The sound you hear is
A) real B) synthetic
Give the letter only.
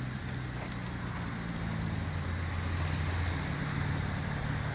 A